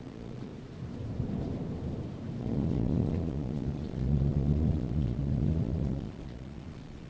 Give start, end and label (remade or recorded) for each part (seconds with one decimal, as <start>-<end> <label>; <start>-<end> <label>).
0.0-0.5 remade; 0.5-2.4 recorded; 2.4-7.1 remade